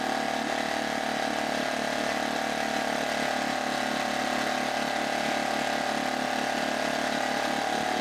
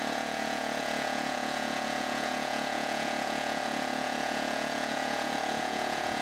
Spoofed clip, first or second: second